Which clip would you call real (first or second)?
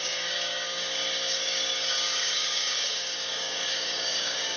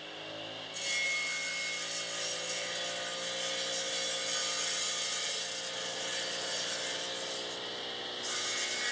second